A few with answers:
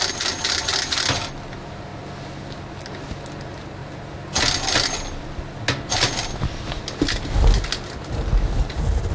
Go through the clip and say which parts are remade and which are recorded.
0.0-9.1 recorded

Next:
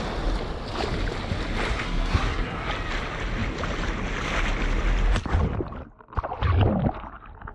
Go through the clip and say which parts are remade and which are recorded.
0.0-1.7 recorded; 1.7-2.7 remade; 2.7-7.5 recorded

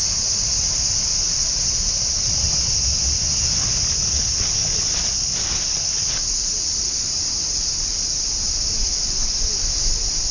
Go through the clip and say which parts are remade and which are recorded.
0.0-10.3 recorded